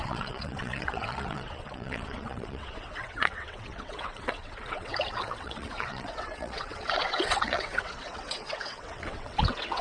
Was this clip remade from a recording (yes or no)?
yes